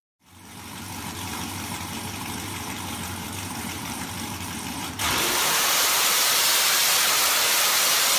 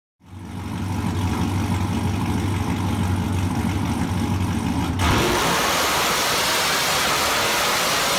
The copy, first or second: first